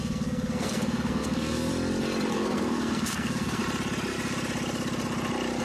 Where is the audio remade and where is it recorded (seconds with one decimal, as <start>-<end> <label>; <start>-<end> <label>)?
0.0-1.7 remade; 1.7-2.3 recorded; 2.3-3.6 remade; 3.6-5.6 recorded